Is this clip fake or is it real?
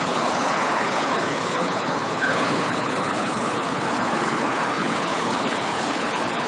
fake